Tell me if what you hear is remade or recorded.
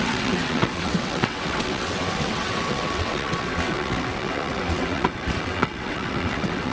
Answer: remade